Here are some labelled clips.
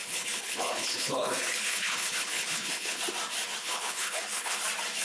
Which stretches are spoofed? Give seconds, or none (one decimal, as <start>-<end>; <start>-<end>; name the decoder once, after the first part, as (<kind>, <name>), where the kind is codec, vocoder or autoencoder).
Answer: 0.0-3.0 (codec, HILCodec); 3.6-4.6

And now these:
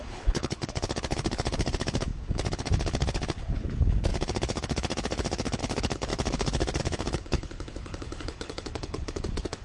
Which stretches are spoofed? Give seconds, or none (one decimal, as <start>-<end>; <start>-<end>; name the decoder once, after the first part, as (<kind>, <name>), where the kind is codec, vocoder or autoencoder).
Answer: 0.0-9.6 (codec, HILCodec)

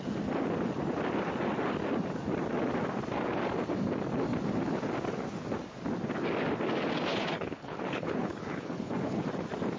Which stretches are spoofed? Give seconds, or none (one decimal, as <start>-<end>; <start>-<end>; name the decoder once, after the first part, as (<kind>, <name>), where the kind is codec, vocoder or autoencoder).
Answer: 7.1-9.2 (codec, HILCodec)

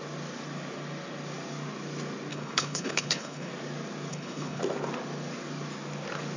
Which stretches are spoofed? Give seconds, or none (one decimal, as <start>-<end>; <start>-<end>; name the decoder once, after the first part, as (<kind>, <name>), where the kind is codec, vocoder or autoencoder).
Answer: 2.3-3.5 (codec, HILCodec); 4.1-4.6

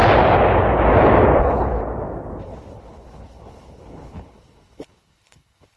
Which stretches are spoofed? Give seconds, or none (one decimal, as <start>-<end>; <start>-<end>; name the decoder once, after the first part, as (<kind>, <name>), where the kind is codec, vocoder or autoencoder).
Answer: 1.4-1.8 (codec, HILCodec); 2.4-5.8

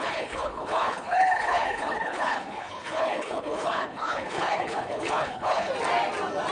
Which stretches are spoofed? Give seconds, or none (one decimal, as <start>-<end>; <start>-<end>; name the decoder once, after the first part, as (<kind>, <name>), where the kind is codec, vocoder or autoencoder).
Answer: 0.0-5.7 (codec, HILCodec)